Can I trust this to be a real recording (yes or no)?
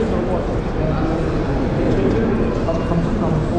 yes